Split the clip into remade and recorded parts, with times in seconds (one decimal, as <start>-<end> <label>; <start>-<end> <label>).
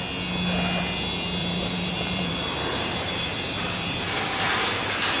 0.0-1.4 recorded; 1.4-4.5 remade; 4.5-5.2 recorded